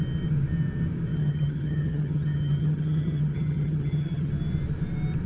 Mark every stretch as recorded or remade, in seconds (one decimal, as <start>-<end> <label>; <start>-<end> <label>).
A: 0.0-1.1 recorded; 1.1-4.3 remade; 4.3-5.3 recorded